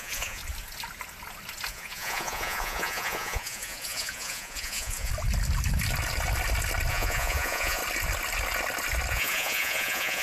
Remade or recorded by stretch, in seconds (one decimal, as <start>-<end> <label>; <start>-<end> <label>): 0.0-0.4 remade; 0.4-1.7 recorded; 1.7-5.1 remade; 5.1-6.9 recorded; 6.9-7.8 remade; 7.8-9.1 recorded; 9.1-10.2 remade